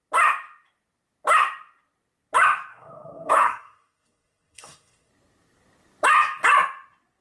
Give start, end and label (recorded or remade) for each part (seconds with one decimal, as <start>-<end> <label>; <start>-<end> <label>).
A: 0.0-2.7 recorded; 2.7-5.1 remade; 5.1-7.2 recorded